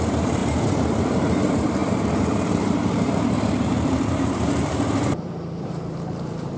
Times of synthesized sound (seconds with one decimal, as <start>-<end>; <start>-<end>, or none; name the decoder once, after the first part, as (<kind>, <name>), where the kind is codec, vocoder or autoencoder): 0.0-6.6 (vocoder, BigVGAN v2)